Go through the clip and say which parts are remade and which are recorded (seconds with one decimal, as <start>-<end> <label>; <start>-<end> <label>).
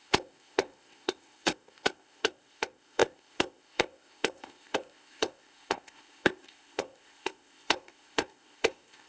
0.0-9.1 remade